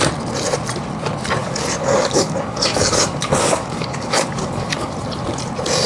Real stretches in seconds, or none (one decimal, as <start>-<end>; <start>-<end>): 0.0-1.4; 4.9-5.9